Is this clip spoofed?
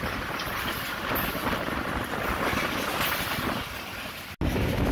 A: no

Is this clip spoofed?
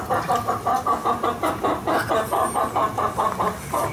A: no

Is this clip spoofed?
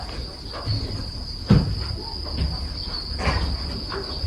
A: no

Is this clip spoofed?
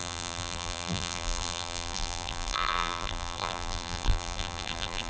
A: yes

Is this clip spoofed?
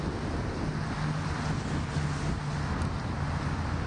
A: no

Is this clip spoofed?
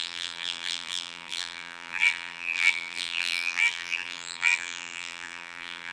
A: yes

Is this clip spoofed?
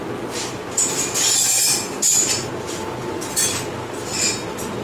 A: no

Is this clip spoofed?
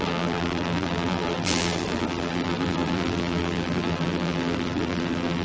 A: yes